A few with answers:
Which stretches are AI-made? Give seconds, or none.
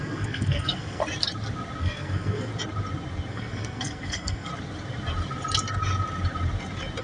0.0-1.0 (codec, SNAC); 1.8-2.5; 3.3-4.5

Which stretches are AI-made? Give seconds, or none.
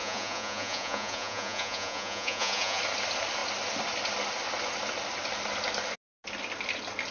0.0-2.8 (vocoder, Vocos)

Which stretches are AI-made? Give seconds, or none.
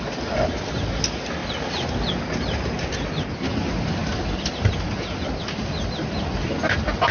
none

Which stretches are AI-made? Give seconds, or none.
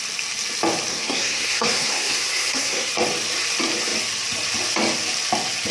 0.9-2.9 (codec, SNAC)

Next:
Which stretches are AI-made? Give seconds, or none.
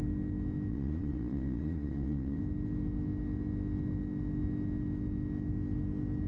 0.7-2.4 (vocoder, Vocos)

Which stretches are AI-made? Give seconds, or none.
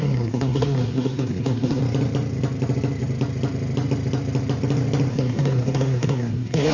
0.0-1.8 (codec, SNAC); 5.1-6.7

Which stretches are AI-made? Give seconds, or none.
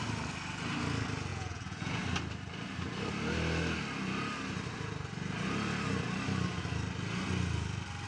1.3-2.0 (vocoder, Vocos)